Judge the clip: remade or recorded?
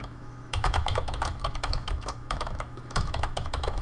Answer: remade